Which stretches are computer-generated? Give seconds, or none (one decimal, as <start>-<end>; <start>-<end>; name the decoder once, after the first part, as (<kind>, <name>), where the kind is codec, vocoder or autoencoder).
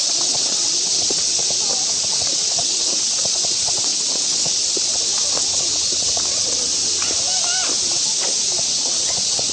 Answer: 0.0-1.4 (vocoder, WaveNeXt); 2.1-6.7; 8.7-9.5